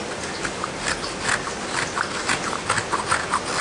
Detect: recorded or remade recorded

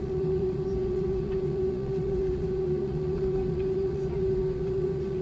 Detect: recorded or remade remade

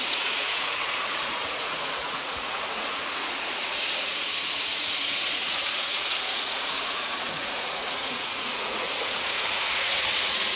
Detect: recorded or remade remade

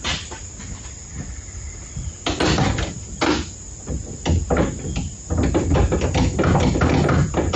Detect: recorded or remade recorded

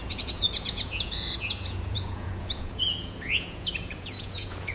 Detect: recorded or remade remade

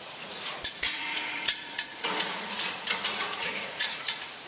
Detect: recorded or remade remade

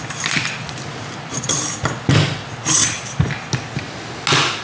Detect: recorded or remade recorded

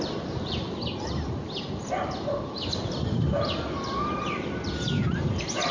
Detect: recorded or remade recorded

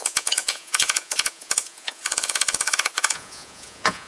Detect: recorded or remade remade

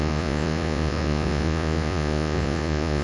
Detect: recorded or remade remade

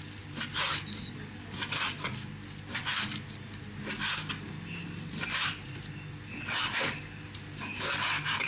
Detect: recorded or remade recorded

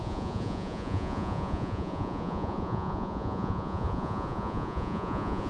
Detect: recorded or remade remade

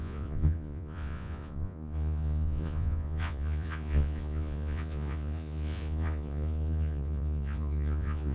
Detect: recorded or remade remade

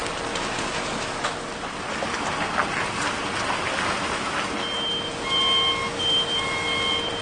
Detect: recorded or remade recorded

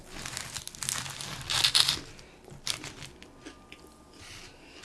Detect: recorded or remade recorded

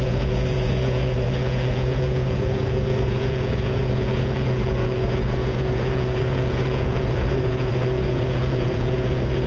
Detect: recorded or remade remade